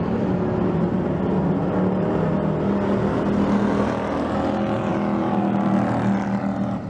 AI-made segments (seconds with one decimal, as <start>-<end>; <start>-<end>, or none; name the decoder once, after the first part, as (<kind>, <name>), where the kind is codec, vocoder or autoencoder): none